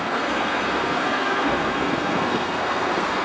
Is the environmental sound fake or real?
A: fake